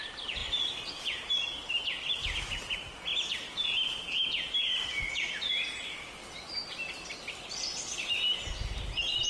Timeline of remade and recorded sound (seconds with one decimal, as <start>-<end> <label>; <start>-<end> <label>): 0.0-9.3 recorded